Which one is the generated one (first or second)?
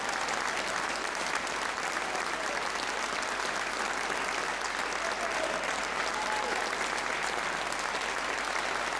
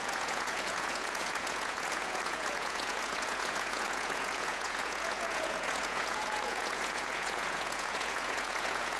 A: second